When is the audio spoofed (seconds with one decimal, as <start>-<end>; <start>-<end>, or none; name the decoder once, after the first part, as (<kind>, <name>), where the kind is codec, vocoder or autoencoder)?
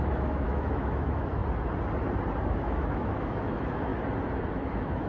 0.0-1.4 (autoencoder, DAC-VAE); 2.5-3.9; 4.5-5.1